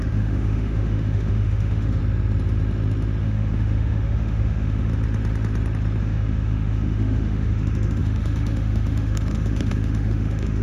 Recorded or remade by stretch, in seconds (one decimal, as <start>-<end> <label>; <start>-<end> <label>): 0.0-2.0 remade; 2.0-3.2 recorded; 3.2-4.9 remade; 4.9-6.0 recorded; 6.0-10.6 remade